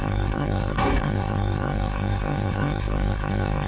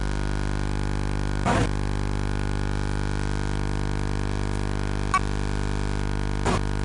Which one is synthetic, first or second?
first